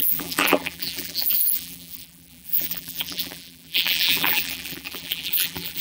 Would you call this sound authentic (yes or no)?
no